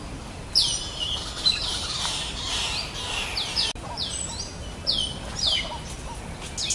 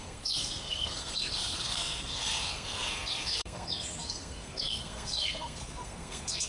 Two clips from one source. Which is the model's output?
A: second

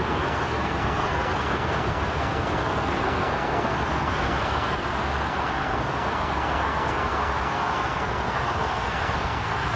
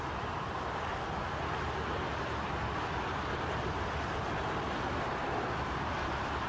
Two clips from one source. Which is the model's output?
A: first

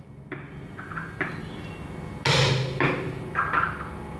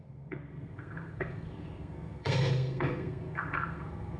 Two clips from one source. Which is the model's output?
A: second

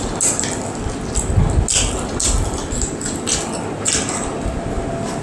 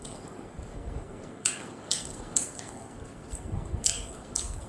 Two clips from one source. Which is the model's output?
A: second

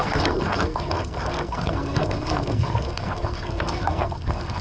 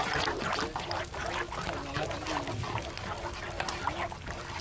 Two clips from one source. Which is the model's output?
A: first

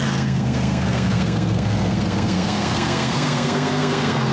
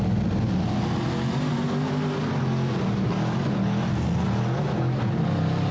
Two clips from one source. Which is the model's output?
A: first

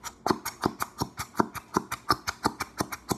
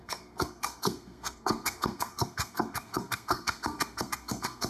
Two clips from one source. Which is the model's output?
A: second